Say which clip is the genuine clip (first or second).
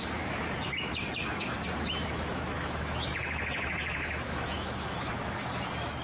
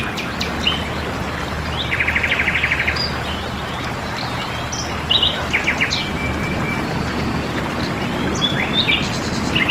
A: second